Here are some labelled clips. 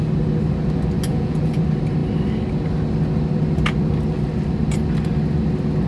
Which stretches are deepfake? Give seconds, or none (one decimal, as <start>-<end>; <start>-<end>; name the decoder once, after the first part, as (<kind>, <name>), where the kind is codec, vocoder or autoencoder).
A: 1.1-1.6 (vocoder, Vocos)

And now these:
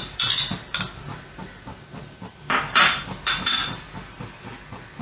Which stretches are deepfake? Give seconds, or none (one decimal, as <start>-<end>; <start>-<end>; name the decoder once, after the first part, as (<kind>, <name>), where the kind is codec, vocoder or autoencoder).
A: none

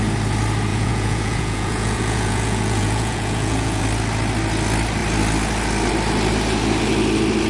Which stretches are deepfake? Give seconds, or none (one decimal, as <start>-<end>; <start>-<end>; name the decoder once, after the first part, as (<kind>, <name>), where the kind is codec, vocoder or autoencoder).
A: 0.7-3.8 (vocoder, Vocos)

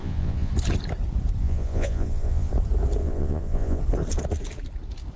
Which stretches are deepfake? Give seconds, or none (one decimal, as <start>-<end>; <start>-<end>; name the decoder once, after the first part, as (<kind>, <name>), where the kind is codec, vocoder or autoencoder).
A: 0.0-0.5 (vocoder, Vocos); 1.4-2.5; 3.0-3.8

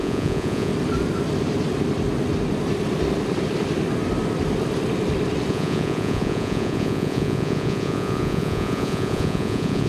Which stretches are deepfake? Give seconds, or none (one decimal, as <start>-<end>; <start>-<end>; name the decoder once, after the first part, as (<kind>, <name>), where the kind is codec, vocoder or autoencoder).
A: 0.0-0.7 (vocoder, Vocos); 5.5-9.9